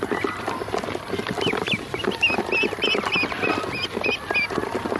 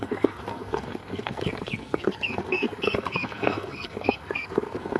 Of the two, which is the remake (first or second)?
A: second